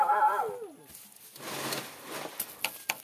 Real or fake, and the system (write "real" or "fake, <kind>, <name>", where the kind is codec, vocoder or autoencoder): real